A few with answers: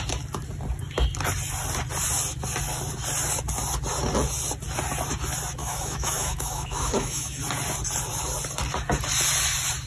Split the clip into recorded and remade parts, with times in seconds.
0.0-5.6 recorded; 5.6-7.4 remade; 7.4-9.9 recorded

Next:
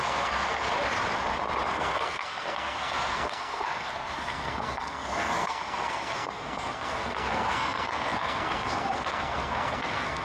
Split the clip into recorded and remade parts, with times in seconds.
0.0-0.7 remade; 0.7-1.7 recorded; 1.7-10.2 remade

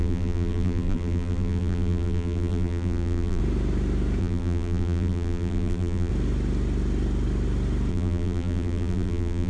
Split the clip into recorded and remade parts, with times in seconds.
0.0-3.4 remade; 3.4-4.2 recorded; 4.2-6.1 remade; 6.1-7.9 recorded; 7.9-9.5 remade

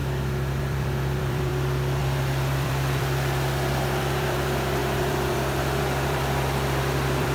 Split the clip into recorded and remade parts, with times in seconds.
0.0-0.6 recorded; 0.6-1.5 remade; 1.5-2.0 recorded; 2.0-7.3 remade

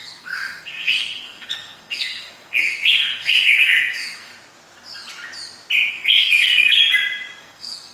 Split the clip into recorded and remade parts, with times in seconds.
0.0-4.3 remade; 4.3-5.9 recorded; 5.9-6.8 remade; 6.8-7.4 recorded; 7.4-7.9 remade